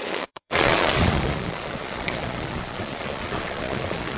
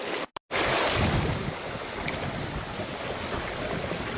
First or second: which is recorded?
second